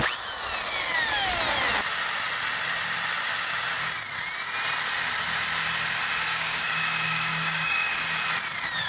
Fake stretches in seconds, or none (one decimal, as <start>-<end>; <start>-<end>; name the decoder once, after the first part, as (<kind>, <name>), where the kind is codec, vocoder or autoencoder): 6.3-8.0 (codec, DAC)